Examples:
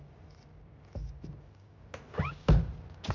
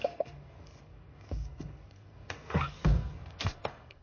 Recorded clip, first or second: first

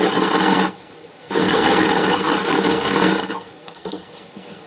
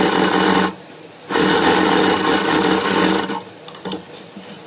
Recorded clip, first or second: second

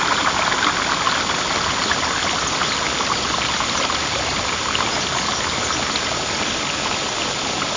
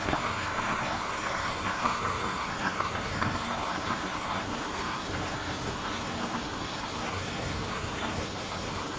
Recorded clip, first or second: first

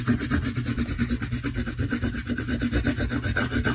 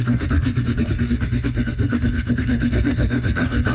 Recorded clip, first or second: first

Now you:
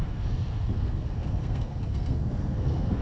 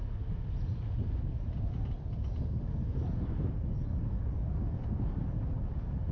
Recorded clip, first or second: second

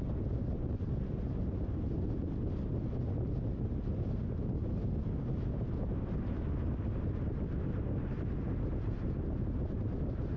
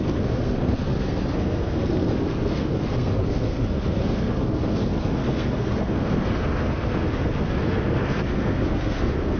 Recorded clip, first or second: first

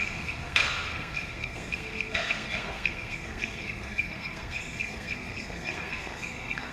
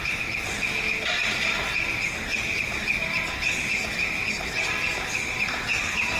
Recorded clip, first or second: second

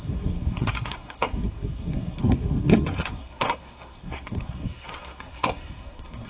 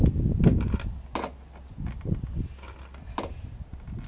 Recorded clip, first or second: second